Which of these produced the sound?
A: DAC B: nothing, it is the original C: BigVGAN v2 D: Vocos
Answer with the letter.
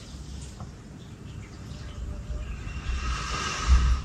B